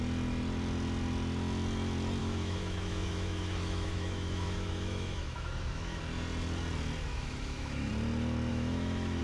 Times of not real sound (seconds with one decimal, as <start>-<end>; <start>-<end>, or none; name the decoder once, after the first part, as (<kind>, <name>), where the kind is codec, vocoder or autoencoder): 2.2-6.0 (autoencoder, DAC-VAE); 7.1-7.9; 8.5-9.2